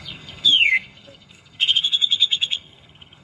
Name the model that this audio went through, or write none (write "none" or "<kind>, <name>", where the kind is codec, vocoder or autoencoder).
codec, SNAC